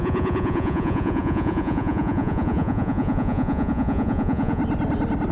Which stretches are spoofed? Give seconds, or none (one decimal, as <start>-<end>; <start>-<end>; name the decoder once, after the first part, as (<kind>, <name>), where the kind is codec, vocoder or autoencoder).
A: 0.0-4.6 (vocoder, Vocos)